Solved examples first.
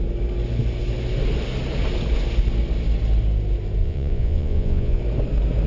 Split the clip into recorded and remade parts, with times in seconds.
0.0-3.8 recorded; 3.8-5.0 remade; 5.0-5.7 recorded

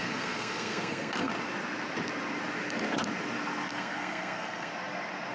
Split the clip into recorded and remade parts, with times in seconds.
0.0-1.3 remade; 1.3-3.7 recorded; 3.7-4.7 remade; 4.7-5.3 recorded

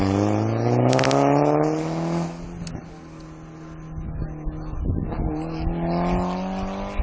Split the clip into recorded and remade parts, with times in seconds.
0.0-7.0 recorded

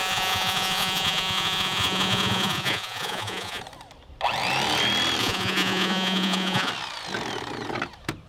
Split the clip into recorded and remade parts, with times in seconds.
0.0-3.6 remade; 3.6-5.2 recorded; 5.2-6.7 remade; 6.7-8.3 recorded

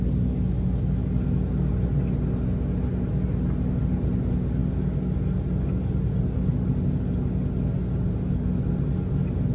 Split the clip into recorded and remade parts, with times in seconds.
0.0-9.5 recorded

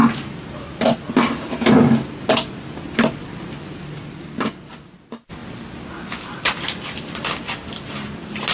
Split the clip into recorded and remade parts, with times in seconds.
0.0-8.5 recorded

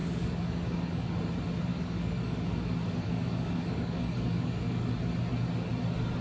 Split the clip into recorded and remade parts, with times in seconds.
0.0-1.2 remade; 1.2-1.7 recorded; 1.7-4.9 remade; 4.9-6.2 recorded

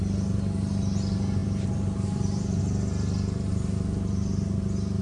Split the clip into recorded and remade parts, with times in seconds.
0.0-1.4 recorded; 1.4-2.6 remade; 2.6-5.0 recorded